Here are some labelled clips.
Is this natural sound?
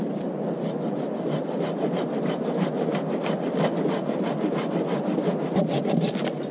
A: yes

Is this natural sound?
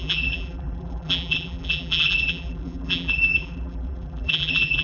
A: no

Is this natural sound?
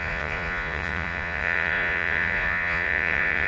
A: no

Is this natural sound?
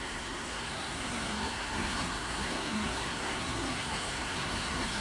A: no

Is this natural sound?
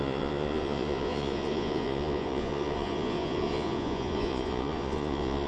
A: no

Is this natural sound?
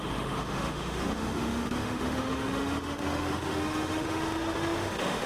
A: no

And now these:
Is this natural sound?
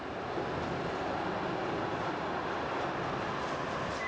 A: yes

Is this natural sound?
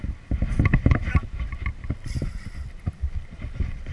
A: no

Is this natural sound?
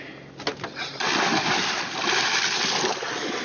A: yes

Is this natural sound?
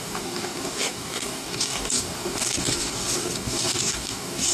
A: no